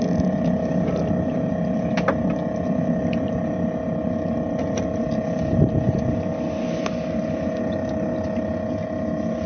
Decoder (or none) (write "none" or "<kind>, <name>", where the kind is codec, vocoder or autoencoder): none